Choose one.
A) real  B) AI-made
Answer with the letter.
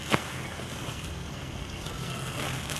B